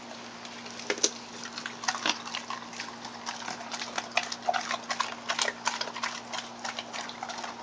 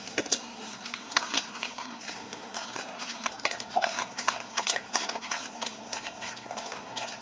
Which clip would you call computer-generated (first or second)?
second